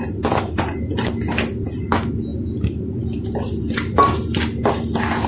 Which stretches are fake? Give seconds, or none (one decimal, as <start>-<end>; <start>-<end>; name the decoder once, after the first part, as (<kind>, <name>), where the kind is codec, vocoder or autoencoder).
none